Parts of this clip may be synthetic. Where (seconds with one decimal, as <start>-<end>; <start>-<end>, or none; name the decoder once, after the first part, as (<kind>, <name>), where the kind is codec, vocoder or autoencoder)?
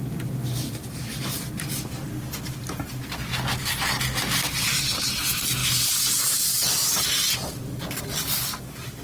none